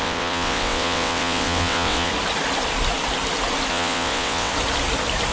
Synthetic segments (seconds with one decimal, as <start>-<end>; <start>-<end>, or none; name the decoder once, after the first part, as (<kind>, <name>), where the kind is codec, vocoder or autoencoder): 0.0-2.1 (vocoder, WaveNeXt); 3.7-4.5